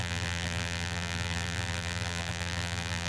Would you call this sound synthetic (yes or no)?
yes